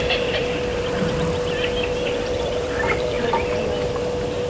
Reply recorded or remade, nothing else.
remade